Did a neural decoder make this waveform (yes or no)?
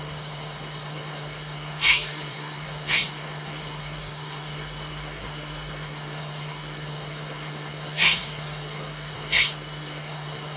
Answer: yes